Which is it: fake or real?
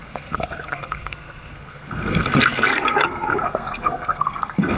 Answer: fake